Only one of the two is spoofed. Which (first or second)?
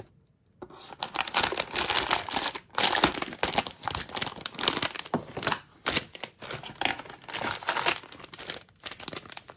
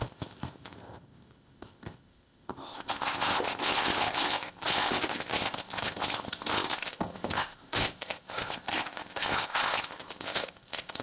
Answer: second